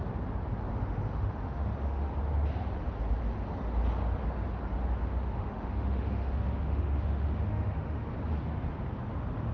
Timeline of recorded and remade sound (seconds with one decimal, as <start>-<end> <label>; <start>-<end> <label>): 0.0-0.7 recorded; 0.7-2.1 remade; 2.1-5.0 recorded; 5.0-8.1 remade; 8.1-9.5 recorded

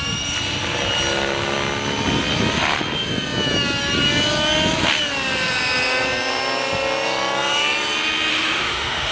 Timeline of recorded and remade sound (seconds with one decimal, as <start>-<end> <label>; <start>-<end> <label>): 0.0-8.3 recorded; 8.3-9.1 remade

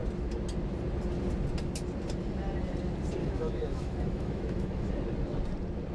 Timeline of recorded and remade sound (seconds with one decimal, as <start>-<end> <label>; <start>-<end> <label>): 0.0-3.2 recorded; 3.2-4.9 remade; 4.9-5.9 recorded

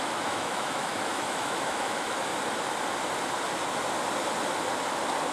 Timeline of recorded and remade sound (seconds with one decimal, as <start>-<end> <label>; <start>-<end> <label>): 0.0-2.3 remade; 2.3-5.3 recorded

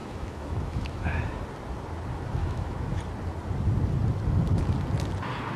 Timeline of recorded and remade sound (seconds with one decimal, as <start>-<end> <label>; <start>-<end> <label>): 0.0-1.2 remade; 1.2-2.4 recorded; 2.4-3.0 remade; 3.0-5.6 recorded